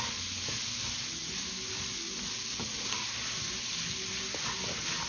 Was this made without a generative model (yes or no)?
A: yes